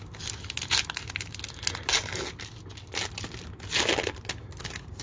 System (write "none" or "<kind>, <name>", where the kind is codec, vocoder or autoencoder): none